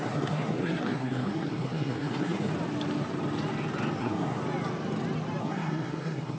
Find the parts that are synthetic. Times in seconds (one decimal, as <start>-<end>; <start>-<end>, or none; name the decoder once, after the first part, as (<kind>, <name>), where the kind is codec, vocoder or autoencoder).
0.0-2.5 (codec, SNAC); 4.0-4.4; 5.4-6.4